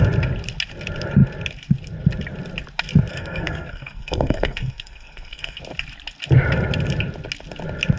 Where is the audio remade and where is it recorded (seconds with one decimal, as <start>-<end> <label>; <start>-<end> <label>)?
0.0-3.1 recorded; 3.1-5.6 remade; 5.6-8.0 recorded